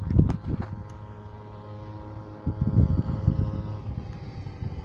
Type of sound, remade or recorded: recorded